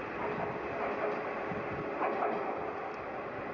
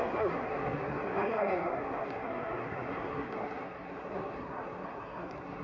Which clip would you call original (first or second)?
first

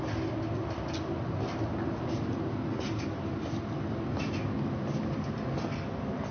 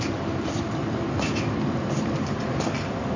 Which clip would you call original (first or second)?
first